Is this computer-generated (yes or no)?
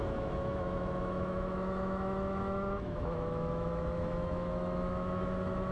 yes